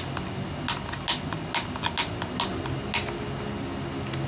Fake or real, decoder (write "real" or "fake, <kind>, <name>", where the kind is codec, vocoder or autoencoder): real